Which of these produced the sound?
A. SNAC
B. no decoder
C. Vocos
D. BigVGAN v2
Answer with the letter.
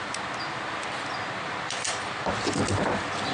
B